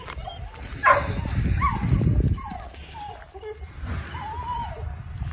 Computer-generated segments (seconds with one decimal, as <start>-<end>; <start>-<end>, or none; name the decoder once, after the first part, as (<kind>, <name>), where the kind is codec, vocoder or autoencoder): none